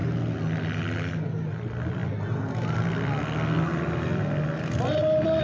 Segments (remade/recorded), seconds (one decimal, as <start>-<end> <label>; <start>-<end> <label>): 0.0-5.4 recorded